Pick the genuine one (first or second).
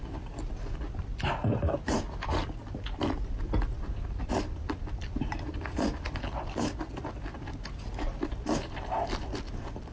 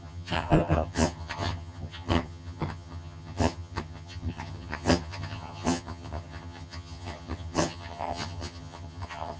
first